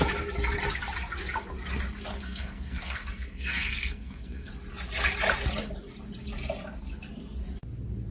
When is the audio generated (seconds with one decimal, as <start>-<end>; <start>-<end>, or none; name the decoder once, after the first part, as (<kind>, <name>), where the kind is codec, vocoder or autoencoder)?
2.1-4.5 (codec, SNAC)